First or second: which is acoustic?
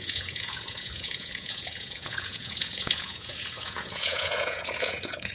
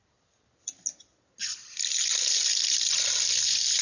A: second